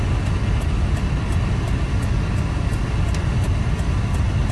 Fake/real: real